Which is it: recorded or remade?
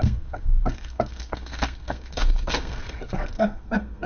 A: remade